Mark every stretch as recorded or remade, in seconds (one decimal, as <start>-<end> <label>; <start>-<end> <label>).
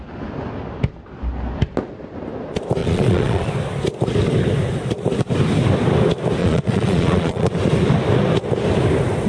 0.0-2.8 recorded; 2.8-3.5 remade; 3.5-6.4 recorded; 6.4-7.5 remade; 7.5-9.3 recorded